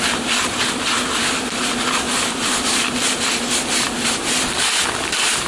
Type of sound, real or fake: real